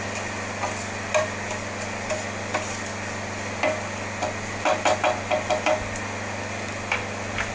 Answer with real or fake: real